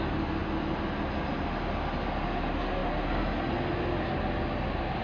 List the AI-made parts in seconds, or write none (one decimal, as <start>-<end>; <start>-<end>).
none